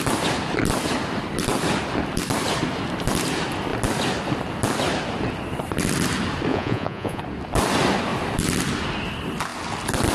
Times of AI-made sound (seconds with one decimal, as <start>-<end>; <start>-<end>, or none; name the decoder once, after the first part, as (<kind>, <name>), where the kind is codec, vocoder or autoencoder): 6.5-7.2 (vocoder, Vocos)